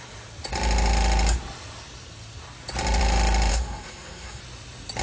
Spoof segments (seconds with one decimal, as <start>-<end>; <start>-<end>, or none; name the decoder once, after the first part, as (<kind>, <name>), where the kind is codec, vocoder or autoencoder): 3.5-4.4 (codec, SNAC)